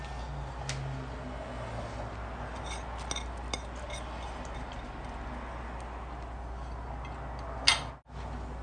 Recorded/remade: recorded